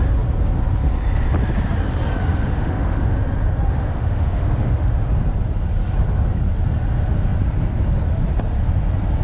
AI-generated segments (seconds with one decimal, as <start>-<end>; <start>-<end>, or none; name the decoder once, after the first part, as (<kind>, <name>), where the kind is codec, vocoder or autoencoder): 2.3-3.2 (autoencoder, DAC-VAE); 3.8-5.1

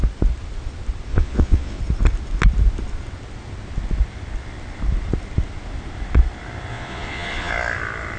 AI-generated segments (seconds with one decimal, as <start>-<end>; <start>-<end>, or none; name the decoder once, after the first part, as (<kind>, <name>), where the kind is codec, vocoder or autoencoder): 1.1-1.8 (vocoder, Vocos); 6.7-7.5

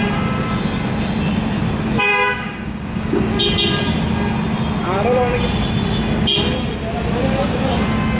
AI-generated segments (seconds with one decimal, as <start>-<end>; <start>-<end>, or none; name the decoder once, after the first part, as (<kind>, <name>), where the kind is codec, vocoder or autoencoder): 2.1-3.3 (codec, DAC)

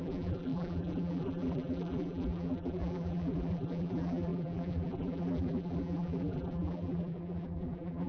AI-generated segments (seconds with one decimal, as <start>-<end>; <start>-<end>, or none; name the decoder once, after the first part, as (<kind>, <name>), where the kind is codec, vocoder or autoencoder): 0.0-8.1 (vocoder, BigVGAN v2)

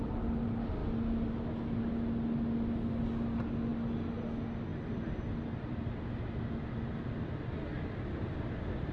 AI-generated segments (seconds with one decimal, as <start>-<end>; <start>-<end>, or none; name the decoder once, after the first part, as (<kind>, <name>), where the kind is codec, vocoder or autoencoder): 4.7-6.0 (vocoder, BigVGAN v2)

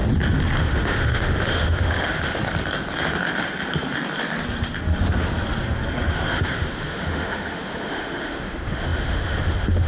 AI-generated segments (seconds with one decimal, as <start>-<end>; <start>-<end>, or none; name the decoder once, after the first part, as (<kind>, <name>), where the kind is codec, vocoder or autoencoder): 0.6-2.4 (autoencoder, DAC-VAE); 6.1-9.9

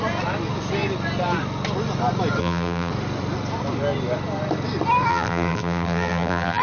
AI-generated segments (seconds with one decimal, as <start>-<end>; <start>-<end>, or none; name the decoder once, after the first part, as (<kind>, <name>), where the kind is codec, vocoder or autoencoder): 2.4-2.9 (vocoder, BigVGAN v2); 5.1-6.6

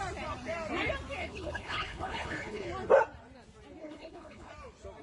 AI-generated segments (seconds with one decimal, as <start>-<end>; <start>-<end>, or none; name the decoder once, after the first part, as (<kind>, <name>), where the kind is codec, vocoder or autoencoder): 1.2-2.7 (codec, HILCodec); 3.8-4.5